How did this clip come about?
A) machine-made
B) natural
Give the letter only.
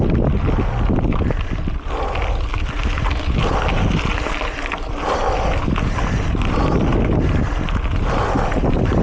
B